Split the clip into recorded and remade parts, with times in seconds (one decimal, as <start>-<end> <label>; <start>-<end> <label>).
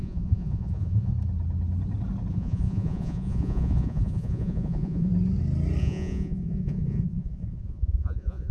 0.0-1.1 remade; 1.1-2.3 recorded; 2.3-5.1 remade; 5.1-5.8 recorded; 5.8-8.5 remade